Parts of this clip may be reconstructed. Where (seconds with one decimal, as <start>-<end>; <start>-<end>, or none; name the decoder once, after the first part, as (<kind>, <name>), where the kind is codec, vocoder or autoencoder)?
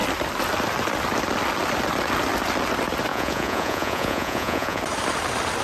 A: 3.1-4.8 (vocoder, Vocos)